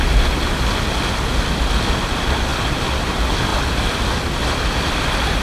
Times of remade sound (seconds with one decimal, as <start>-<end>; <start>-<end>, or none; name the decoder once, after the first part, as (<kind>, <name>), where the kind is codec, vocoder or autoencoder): none